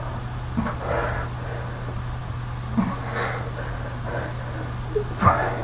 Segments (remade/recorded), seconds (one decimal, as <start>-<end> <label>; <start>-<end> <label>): 0.0-5.6 recorded